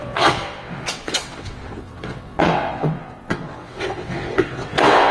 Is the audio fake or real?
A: fake